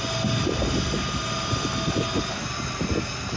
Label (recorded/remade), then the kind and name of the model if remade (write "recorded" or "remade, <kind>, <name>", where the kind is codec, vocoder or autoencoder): recorded